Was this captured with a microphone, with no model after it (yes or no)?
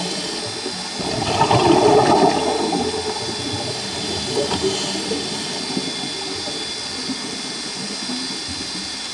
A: yes